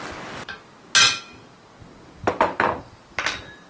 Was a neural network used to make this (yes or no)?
no